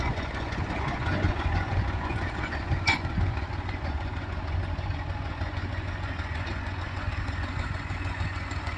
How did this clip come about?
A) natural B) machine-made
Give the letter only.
B